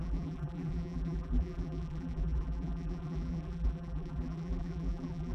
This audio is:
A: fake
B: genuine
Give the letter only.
A